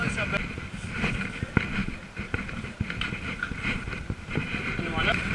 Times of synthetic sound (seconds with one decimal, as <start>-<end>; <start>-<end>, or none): 1.8-5.3